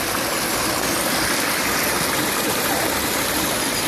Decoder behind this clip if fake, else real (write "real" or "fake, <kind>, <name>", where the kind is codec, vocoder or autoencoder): real